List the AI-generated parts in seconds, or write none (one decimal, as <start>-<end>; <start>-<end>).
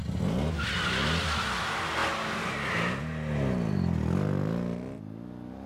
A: none